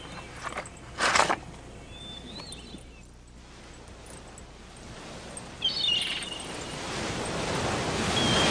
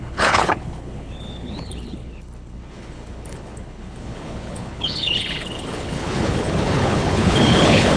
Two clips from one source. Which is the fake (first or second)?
second